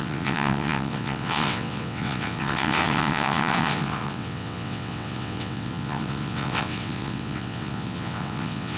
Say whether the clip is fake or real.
fake